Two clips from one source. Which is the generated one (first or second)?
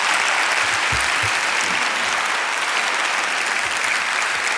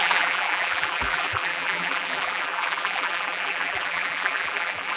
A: second